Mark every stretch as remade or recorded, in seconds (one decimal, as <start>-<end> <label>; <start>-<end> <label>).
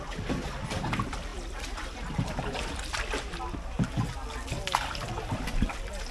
0.0-6.1 recorded